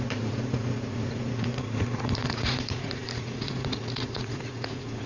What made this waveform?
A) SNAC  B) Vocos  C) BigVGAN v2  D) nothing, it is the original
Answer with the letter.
B